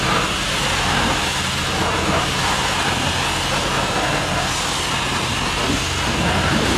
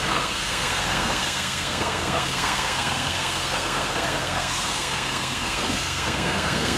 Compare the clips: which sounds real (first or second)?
first